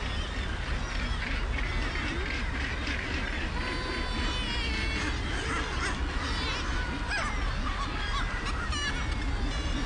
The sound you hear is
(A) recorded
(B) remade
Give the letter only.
A